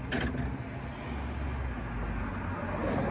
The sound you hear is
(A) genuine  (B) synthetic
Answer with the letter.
A